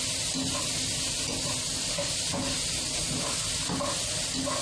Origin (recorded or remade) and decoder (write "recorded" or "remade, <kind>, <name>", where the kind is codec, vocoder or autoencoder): recorded